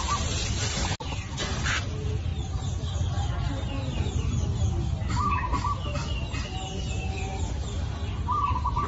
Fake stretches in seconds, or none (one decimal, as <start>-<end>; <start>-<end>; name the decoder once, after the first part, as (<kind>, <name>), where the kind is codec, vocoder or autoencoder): none